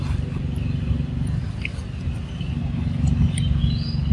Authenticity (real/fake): real